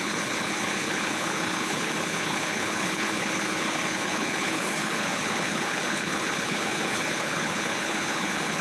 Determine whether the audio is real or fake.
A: fake